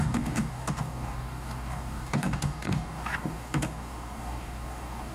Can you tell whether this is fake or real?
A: fake